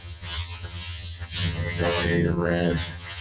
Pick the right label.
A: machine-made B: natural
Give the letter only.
A